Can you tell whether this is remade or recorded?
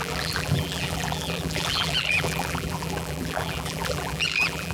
remade